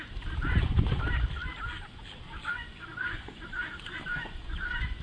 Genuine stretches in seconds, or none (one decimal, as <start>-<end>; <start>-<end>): 0.0-0.5; 1.0-2.9; 3.6-4.1